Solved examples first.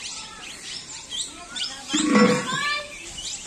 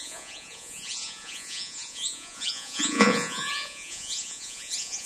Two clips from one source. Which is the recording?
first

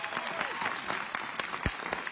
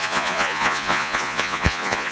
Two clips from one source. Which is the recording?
first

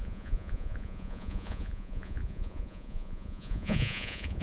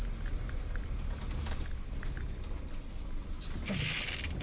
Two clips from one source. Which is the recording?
second